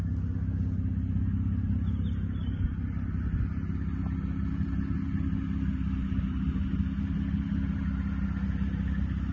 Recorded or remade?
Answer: recorded